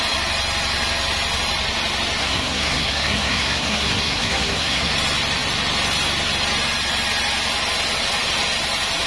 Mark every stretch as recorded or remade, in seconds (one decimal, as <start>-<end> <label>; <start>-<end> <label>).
0.0-2.2 recorded; 2.2-4.9 remade; 4.9-9.1 recorded